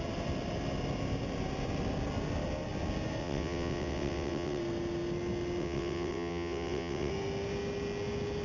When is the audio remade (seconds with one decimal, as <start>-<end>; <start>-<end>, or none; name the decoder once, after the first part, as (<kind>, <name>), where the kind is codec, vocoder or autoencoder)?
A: 3.2-4.6 (vocoder, WaveNeXt); 5.6-7.1